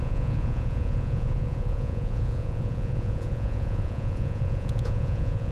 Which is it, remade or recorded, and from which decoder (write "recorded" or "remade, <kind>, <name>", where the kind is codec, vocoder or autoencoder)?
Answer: remade, vocoder, Vocos